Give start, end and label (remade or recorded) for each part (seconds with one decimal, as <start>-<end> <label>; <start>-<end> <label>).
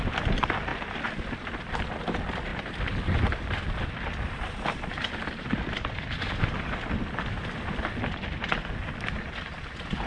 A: 0.0-0.7 recorded; 0.7-1.7 remade; 1.7-2.5 recorded; 2.5-6.6 remade; 6.6-10.1 recorded